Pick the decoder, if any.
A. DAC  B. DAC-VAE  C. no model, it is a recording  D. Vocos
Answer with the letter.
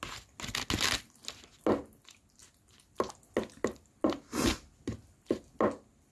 C